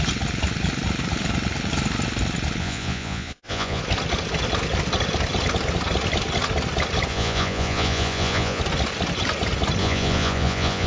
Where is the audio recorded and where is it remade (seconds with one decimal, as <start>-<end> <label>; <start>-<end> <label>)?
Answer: 0.0-2.6 recorded; 2.6-3.8 remade; 3.8-7.1 recorded; 7.1-8.6 remade; 8.6-9.8 recorded; 9.8-10.9 remade